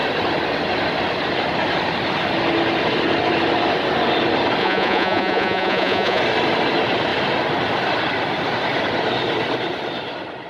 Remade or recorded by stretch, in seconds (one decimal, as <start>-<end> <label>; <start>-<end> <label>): 0.0-4.6 recorded; 4.6-6.2 remade; 6.2-10.5 recorded